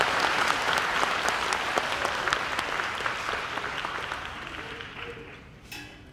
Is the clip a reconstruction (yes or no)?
no